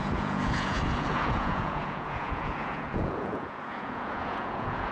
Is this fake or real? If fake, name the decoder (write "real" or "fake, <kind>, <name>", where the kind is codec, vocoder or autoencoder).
fake, vocoder, Vocos